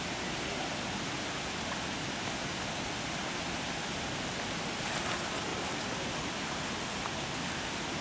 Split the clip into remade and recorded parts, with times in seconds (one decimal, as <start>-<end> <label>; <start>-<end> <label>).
0.0-5.5 recorded; 5.5-6.6 remade; 6.6-8.0 recorded